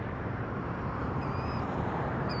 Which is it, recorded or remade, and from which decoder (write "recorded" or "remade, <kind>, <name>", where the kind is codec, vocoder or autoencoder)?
remade, vocoder, BigVGAN v2